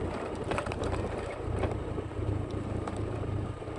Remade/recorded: remade